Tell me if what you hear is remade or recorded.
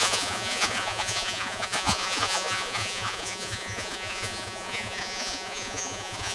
remade